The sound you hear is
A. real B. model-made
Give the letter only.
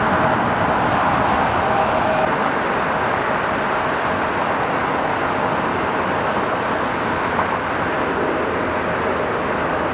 A